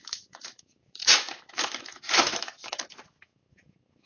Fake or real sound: fake